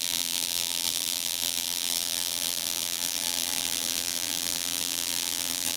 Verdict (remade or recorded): remade